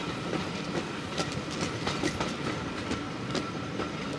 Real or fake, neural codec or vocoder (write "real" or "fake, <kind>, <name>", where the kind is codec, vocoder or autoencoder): fake, vocoder, BigVGAN v2